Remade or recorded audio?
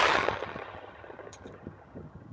remade